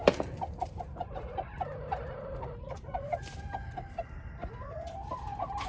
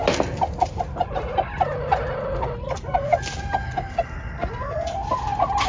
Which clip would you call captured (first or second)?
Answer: second